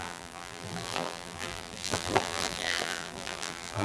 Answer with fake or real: fake